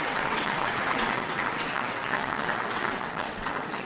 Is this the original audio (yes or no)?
no